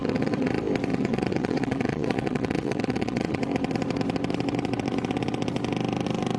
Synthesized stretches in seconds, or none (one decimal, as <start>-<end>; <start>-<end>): 0.0-0.5; 0.9-3.4